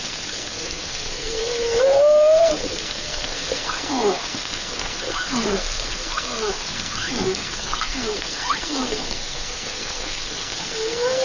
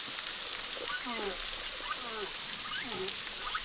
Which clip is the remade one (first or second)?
first